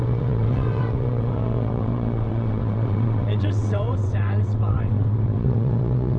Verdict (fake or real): fake